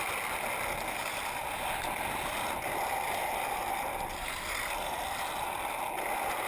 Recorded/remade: recorded